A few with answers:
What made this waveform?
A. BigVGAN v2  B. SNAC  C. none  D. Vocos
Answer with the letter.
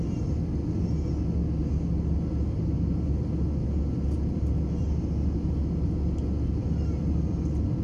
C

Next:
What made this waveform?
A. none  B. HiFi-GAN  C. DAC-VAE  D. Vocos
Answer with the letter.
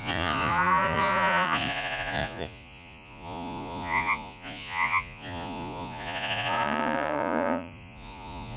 D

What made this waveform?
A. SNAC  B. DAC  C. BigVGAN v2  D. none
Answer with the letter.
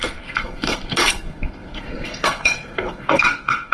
A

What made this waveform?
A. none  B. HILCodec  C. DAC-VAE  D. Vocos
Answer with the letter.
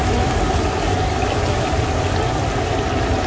A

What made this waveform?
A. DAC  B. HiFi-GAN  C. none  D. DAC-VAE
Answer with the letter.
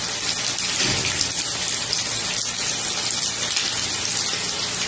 C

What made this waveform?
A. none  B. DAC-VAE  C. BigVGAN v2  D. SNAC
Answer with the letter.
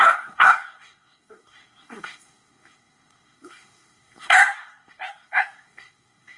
D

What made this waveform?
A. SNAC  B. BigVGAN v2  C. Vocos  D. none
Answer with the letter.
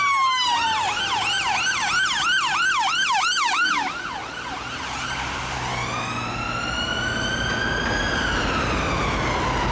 D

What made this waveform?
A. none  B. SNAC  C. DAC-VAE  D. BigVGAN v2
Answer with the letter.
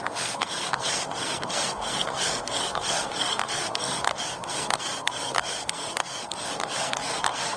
B